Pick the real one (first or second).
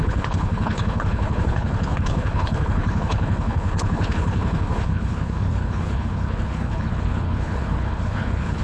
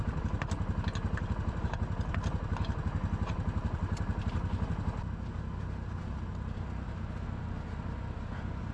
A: second